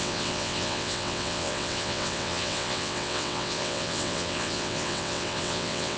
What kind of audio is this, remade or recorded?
remade